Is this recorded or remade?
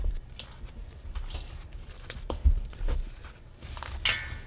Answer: recorded